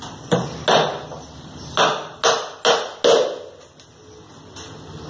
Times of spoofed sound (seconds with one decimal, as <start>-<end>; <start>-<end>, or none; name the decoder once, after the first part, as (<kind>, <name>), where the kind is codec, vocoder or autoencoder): none